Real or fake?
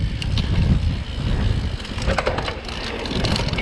real